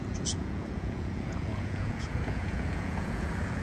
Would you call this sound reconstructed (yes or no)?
yes